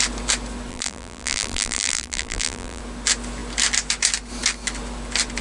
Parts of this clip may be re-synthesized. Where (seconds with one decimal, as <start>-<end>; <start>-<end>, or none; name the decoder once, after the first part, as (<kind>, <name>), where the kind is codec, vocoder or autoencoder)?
0.7-2.8 (vocoder, BigVGAN v2)